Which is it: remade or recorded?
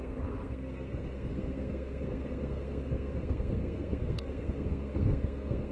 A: remade